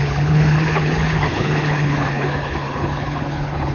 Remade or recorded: remade